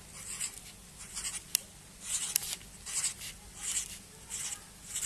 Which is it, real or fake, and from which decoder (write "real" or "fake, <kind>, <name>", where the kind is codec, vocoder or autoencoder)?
real